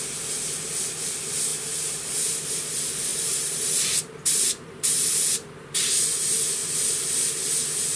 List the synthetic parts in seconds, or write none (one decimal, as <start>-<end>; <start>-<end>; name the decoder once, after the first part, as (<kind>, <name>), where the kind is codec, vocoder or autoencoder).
1.5-2.4 (vocoder, BigVGAN v2); 3.1-5.9; 6.6-7.3